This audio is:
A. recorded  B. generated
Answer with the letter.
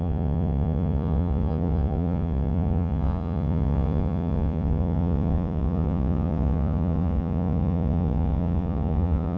B